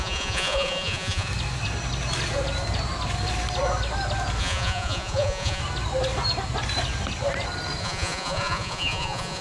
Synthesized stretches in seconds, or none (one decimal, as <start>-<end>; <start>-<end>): 0.0-1.3; 4.4-5.6; 7.8-9.4